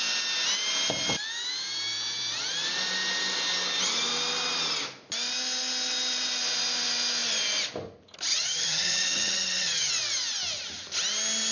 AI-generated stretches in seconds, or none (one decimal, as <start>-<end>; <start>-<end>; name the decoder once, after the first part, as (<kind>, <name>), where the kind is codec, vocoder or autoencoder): 8.3-9.9 (vocoder, HiFi-GAN)